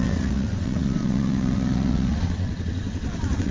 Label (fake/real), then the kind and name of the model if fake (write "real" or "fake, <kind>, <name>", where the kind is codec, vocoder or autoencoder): fake, vocoder, WaveNeXt